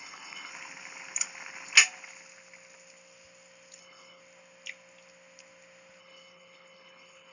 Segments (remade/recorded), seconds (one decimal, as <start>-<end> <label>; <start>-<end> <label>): 0.0-0.5 remade; 0.5-3.8 recorded; 3.8-4.2 remade; 4.2-6.0 recorded; 6.0-7.3 remade